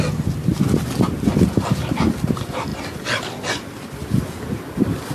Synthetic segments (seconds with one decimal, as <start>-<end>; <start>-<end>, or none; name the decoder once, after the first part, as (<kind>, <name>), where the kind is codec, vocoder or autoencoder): none